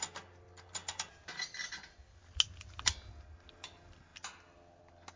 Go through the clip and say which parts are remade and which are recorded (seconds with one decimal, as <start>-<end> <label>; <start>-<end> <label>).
0.0-5.2 recorded